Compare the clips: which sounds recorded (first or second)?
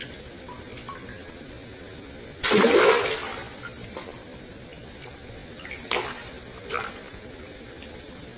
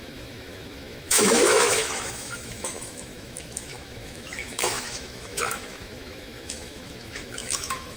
first